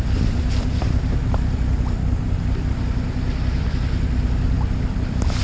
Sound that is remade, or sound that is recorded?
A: remade